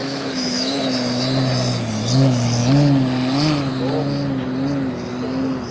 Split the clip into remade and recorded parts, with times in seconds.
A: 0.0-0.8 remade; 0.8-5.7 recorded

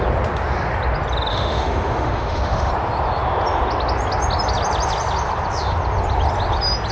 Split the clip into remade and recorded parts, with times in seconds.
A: 0.0-1.3 recorded; 1.3-2.7 remade; 2.7-6.9 recorded

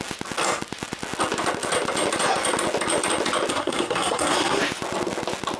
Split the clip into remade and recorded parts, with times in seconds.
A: 0.0-3.5 recorded; 3.5-4.6 remade; 4.6-5.6 recorded